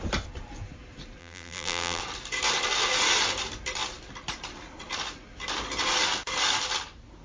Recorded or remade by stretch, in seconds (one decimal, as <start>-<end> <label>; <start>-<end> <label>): 0.0-1.2 recorded; 1.2-2.0 remade; 2.0-7.2 recorded